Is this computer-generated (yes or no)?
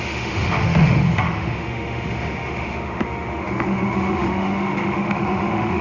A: yes